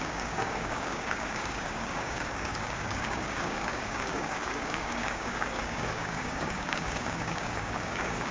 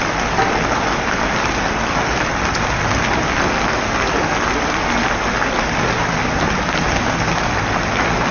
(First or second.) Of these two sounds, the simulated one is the first